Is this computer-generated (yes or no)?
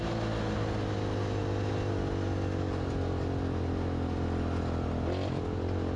no